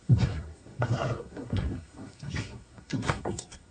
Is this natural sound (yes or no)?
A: no